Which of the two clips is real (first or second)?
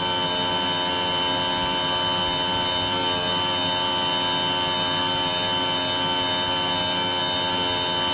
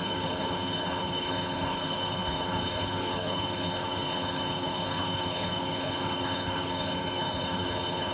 first